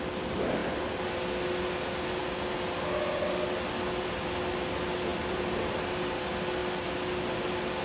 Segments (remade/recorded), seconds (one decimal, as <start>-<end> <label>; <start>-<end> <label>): 0.0-7.8 recorded